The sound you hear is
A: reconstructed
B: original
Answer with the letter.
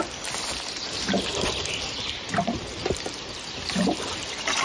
B